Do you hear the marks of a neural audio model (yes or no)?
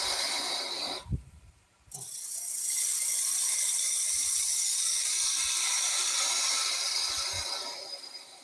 yes